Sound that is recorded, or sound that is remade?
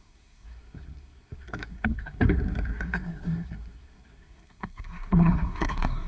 remade